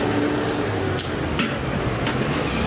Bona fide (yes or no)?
yes